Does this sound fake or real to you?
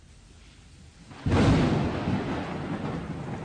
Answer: real